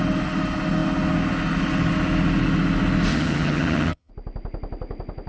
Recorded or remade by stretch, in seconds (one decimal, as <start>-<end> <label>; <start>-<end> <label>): 0.0-3.1 recorded; 3.1-4.1 remade; 4.1-5.3 recorded